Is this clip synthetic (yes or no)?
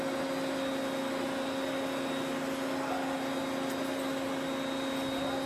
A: no